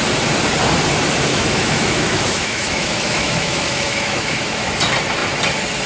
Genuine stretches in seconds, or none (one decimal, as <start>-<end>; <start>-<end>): 0.0-1.3; 4.8-5.9